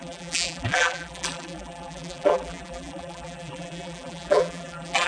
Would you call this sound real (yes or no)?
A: no